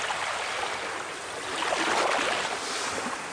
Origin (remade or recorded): recorded